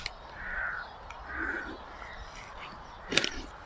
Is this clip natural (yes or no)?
no